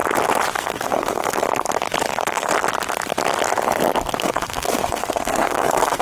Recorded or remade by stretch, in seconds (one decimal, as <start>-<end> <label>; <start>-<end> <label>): 0.0-0.6 recorded; 0.6-1.4 remade; 1.4-2.1 recorded; 2.1-2.5 remade; 2.5-4.2 recorded; 4.2-6.0 remade